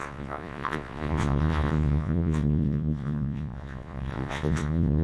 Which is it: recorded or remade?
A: remade